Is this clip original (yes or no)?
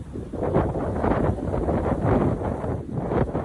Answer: yes